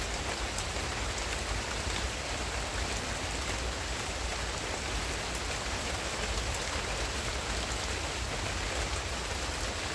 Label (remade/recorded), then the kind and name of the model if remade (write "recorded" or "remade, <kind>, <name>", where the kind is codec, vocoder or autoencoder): recorded